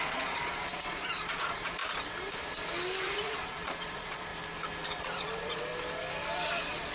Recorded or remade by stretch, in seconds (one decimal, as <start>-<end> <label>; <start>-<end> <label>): 0.0-1.8 remade; 1.8-3.2 recorded; 3.2-4.3 remade; 4.3-5.0 recorded; 5.0-5.7 remade; 5.7-6.5 recorded; 6.5-6.9 remade